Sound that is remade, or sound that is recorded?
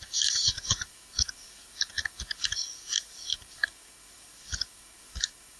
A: remade